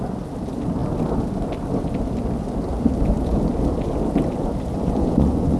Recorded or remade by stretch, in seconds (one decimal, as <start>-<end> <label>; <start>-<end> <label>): 0.0-4.7 recorded; 4.7-5.6 remade